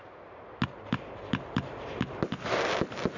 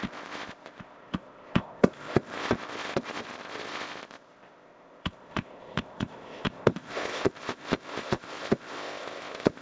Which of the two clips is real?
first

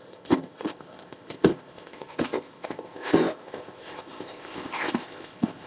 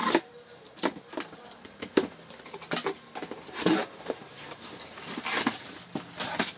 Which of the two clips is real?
second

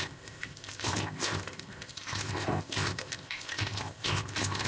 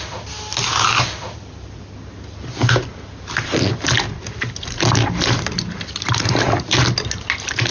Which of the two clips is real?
second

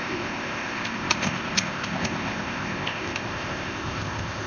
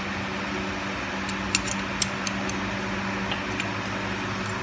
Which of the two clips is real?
second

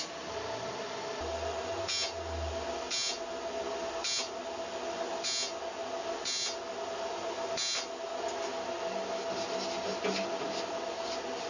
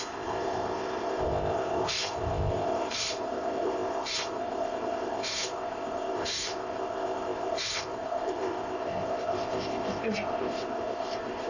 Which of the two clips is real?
first